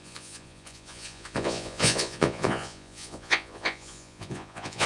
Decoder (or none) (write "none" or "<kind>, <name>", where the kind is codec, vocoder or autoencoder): vocoder, Vocos